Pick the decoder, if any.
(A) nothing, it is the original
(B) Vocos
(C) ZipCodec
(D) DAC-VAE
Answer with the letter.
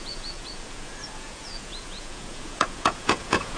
B